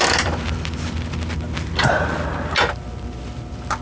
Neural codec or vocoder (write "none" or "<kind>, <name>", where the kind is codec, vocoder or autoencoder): vocoder, BigVGAN v2